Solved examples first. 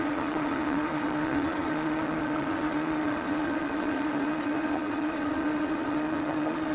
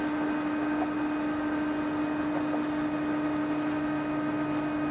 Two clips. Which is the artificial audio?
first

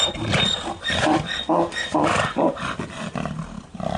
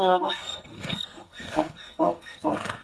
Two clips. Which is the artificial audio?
second